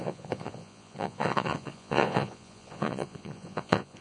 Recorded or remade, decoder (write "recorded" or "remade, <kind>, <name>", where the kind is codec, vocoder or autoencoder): remade, vocoder, Vocos